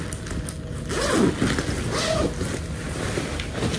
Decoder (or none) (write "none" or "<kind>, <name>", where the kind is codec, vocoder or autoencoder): none